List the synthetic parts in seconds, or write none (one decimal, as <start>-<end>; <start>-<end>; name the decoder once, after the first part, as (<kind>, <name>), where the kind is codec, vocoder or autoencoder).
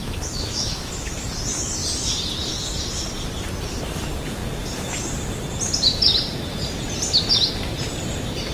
0.0-1.1 (autoencoder, DAC-VAE)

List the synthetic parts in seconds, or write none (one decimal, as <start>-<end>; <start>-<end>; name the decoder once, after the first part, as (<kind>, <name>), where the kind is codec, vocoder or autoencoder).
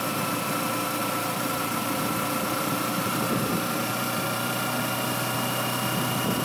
1.0-4.8 (vocoder, BigVGAN v2)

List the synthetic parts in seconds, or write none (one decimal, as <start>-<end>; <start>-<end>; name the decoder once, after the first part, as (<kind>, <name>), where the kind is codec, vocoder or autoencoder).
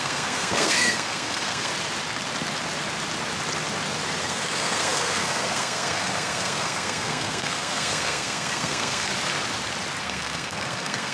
0.0-1.7 (codec, SNAC); 4.2-9.1; 10.0-11.1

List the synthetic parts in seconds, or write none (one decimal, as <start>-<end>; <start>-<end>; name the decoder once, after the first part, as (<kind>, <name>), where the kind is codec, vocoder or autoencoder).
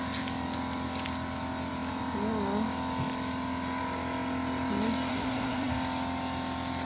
5.1-5.7 (codec, SNAC)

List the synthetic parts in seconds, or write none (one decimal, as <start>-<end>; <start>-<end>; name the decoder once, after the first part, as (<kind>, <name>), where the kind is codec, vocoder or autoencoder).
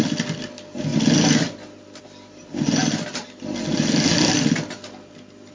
none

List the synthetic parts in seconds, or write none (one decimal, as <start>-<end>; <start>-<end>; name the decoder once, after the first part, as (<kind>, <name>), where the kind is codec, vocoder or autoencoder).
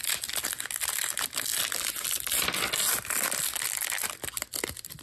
none